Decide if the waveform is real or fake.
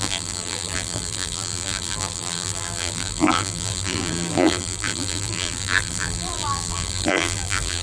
fake